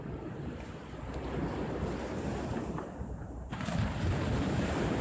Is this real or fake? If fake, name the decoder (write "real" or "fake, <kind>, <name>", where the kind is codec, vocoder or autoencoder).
fake, vocoder, BigVGAN v2